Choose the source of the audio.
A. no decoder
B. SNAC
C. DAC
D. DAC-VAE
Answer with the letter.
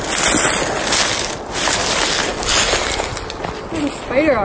A